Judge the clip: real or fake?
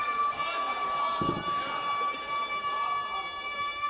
real